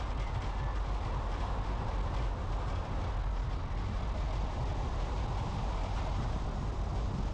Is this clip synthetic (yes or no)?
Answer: no